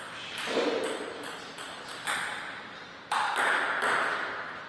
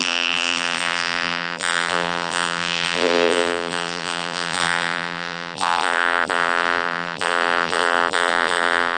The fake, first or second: second